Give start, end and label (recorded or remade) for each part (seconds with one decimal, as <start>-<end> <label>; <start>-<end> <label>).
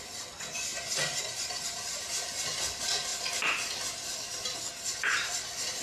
0.0-5.8 recorded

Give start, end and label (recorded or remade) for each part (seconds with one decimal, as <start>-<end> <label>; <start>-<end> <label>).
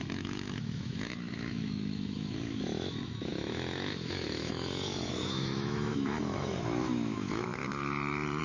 0.0-7.6 remade; 7.6-8.4 recorded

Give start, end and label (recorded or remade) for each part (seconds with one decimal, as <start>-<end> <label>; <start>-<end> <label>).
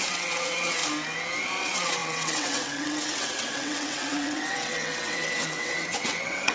0.0-0.8 remade; 0.8-1.4 recorded; 1.4-6.5 remade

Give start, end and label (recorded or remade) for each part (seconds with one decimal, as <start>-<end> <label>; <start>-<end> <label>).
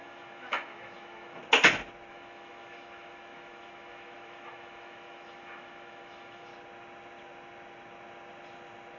0.0-1.4 remade; 1.4-2.1 recorded; 2.1-6.5 remade; 6.5-9.0 recorded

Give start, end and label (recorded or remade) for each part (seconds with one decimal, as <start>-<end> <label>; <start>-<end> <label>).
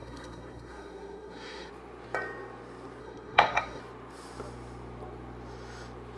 0.0-1.7 remade; 1.7-3.0 recorded; 3.0-3.8 remade; 3.8-6.2 recorded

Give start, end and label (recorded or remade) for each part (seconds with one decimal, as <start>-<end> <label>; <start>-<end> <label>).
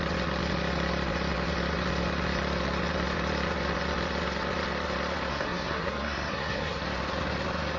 0.0-5.3 recorded; 5.3-6.8 remade; 6.8-7.8 recorded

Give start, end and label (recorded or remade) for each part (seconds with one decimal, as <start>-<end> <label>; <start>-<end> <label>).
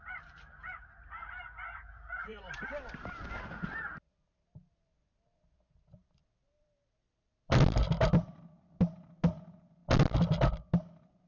0.0-2.3 recorded; 2.3-2.8 remade; 2.8-6.0 recorded; 6.0-7.8 remade; 7.8-11.3 recorded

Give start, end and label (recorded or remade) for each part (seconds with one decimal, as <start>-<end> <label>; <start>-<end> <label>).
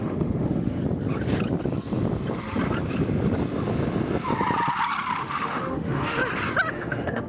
0.0-0.8 remade; 0.8-5.2 recorded; 5.2-6.2 remade; 6.2-6.7 recorded; 6.7-7.3 remade